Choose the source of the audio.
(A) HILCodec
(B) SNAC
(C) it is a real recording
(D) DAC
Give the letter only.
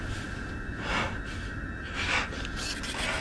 C